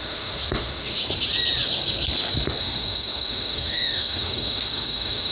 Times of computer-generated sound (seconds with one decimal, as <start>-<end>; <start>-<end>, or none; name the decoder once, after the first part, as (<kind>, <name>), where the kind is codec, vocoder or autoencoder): 0.0-1.0 (autoencoder, DAC-VAE); 2.6-5.3